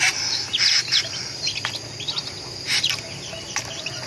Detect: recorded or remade recorded